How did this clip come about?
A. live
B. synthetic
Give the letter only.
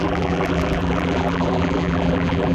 B